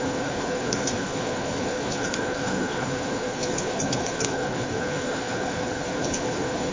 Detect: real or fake fake